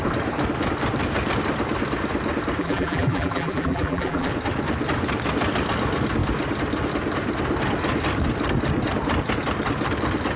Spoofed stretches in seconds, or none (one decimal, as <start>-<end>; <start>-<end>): 2.6-4.3